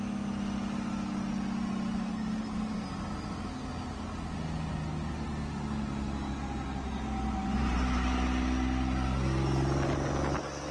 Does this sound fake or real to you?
real